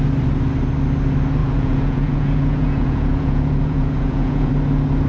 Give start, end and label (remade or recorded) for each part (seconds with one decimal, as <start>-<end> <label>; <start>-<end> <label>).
0.0-1.4 recorded; 1.4-4.5 remade; 4.5-5.1 recorded